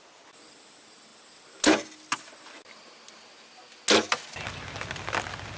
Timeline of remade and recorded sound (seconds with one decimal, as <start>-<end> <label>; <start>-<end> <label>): 0.0-5.6 recorded